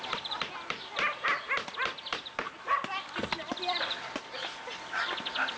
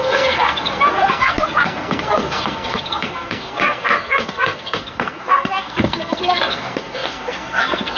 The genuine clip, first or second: first